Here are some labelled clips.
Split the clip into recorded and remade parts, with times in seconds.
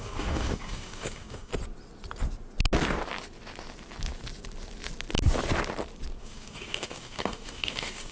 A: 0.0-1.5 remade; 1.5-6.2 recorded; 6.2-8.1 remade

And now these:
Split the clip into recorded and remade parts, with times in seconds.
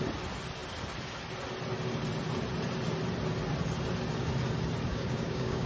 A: 0.0-4.9 recorded; 4.9-5.7 remade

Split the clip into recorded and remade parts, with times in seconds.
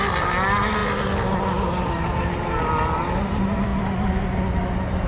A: 0.0-5.1 recorded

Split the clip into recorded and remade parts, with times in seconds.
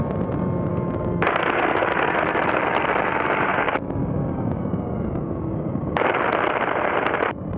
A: 0.0-0.7 recorded; 0.7-1.6 remade; 1.6-3.5 recorded; 3.5-6.2 remade; 6.2-7.6 recorded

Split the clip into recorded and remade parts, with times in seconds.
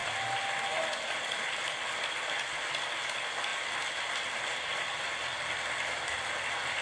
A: 0.0-6.8 recorded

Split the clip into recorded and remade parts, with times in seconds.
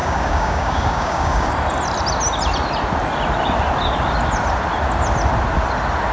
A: 0.0-1.5 remade; 1.5-6.1 recorded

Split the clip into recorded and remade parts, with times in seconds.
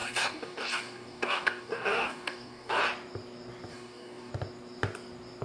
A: 0.0-2.8 remade; 2.8-3.7 recorded; 3.7-4.3 remade; 4.3-5.4 recorded